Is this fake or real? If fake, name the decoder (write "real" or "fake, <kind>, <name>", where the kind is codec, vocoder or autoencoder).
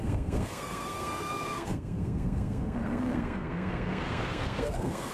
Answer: fake, codec, SNAC